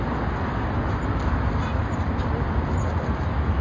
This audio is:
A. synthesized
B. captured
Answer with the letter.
B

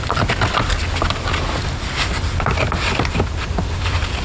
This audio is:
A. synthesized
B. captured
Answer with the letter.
B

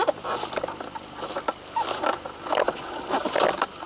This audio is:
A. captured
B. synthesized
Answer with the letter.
A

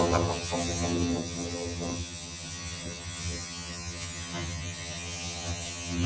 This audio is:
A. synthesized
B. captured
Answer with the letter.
A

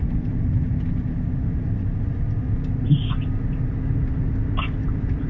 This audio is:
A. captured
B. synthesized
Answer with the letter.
A